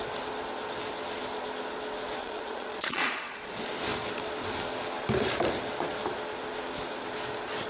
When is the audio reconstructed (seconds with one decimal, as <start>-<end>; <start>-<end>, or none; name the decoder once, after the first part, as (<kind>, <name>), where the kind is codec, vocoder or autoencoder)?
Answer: 2.2-3.4 (vocoder, Vocos)